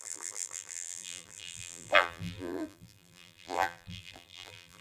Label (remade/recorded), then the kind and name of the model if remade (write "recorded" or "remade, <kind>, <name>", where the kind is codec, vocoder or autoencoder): remade, vocoder, BigVGAN v2